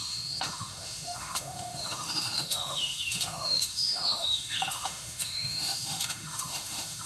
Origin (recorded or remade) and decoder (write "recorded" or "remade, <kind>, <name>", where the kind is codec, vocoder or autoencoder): remade, autoencoder, DAC-VAE